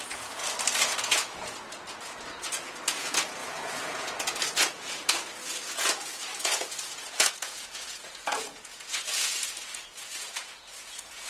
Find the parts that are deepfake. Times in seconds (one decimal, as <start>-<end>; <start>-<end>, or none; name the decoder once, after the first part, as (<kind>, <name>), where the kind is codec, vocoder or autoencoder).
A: 0.0-0.4 (vocoder, Vocos); 1.0-11.3

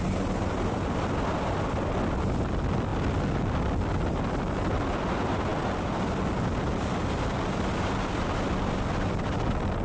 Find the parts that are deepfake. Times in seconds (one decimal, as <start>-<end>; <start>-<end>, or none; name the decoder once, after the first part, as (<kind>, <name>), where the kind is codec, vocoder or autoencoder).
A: none

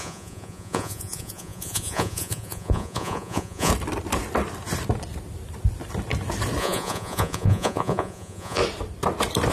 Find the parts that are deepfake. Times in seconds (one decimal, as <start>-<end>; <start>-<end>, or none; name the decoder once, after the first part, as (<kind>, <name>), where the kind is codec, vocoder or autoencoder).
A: 0.0-3.7 (vocoder, Vocos); 6.6-8.6

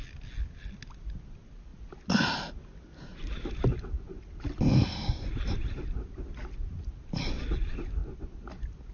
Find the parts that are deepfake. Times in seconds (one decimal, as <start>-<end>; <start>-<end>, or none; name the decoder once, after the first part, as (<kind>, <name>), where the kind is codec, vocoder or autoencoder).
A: none

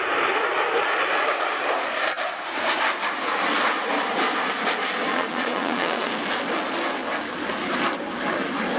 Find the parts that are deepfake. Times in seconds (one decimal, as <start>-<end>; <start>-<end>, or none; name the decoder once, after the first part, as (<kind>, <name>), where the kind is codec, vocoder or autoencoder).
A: 5.1-6.1 (vocoder, Vocos)

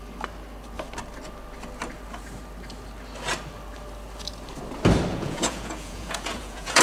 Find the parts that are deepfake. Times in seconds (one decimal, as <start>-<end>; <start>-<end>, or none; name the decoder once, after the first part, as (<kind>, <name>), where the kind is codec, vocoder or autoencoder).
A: 5.1-6.8 (vocoder, Vocos)

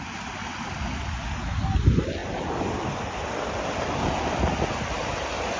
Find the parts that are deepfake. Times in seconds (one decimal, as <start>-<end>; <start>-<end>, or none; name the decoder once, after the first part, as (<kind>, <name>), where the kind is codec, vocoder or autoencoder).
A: none